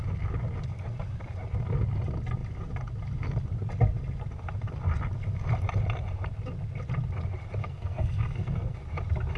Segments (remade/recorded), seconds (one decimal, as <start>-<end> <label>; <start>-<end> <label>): 0.0-7.6 recorded; 7.6-8.8 remade; 8.8-9.4 recorded